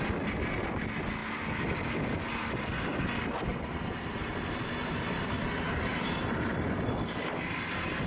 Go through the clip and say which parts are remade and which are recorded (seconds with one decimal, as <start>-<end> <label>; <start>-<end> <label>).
0.0-3.5 recorded; 3.5-5.3 remade; 5.3-5.9 recorded; 5.9-6.4 remade; 6.4-8.1 recorded